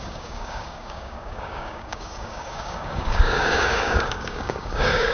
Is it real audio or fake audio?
fake